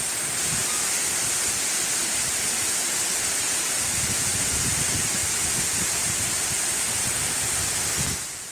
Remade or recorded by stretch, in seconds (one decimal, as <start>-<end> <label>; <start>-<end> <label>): 0.0-0.6 remade; 0.6-2.0 recorded; 2.0-5.2 remade; 5.2-6.3 recorded; 6.3-7.0 remade; 7.0-8.5 recorded